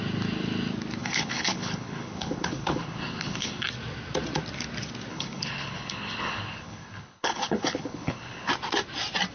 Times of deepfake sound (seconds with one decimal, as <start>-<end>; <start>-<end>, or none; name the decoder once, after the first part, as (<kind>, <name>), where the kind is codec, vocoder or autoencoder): 1.0-3.7 (codec, HILCodec); 5.1-8.5